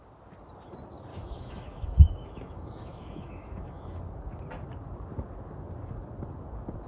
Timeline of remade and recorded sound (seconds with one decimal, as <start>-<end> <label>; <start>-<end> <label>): 0.0-1.1 recorded; 1.1-4.0 remade; 4.0-6.9 recorded